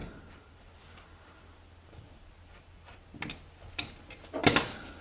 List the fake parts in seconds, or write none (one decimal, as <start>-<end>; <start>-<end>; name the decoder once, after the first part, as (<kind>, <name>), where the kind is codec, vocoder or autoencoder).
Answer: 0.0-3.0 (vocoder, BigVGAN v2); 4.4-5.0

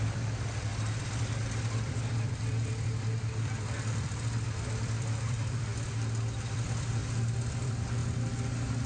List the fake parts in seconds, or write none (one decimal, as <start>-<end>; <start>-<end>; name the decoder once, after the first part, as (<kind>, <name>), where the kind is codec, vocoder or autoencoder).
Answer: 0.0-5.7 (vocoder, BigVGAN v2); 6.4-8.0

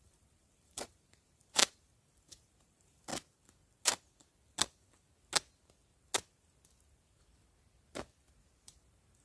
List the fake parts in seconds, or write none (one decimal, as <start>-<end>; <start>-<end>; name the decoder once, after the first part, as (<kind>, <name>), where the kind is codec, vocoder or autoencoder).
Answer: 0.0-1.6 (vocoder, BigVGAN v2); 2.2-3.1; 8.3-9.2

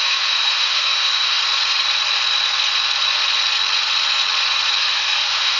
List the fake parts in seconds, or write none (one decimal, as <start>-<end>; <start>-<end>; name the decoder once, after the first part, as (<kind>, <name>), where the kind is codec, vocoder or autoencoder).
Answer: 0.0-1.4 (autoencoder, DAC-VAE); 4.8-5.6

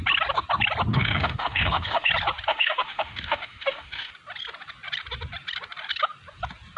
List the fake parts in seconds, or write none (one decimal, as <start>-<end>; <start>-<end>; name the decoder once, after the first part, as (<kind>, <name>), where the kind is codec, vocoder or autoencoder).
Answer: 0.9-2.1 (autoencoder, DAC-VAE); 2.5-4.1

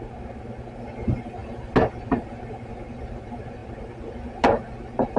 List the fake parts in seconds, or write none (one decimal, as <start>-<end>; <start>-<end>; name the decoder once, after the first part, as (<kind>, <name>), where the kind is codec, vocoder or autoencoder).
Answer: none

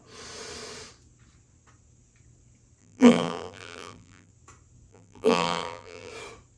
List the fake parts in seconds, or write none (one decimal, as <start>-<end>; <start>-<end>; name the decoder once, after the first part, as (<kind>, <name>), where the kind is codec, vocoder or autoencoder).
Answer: 2.8-4.3 (vocoder, BigVGAN v2); 4.9-6.1